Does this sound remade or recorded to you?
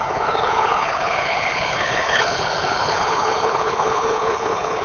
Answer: remade